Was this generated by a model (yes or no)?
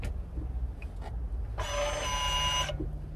no